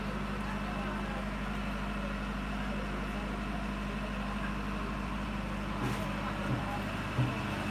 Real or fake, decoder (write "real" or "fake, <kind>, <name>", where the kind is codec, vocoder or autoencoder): real